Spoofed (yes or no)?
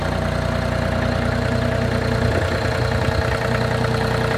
no